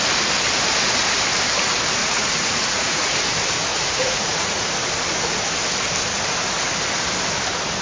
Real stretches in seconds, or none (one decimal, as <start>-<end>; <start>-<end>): 0.0-2.0; 3.2-3.7; 4.7-7.8